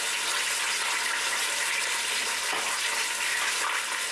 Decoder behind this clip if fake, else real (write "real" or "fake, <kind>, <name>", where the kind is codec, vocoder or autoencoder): real